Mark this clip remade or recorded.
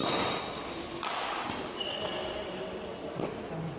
recorded